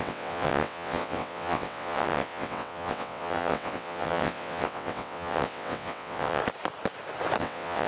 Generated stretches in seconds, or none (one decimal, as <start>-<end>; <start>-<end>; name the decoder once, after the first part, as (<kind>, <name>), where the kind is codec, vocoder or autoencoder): 0.0-6.4 (vocoder, WaveNeXt); 7.4-7.9